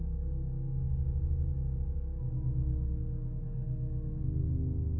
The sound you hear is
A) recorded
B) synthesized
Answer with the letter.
A